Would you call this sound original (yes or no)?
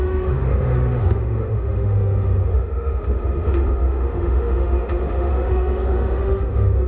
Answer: no